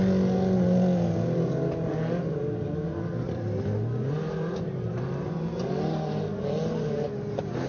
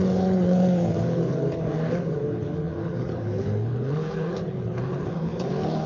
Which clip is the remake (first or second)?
second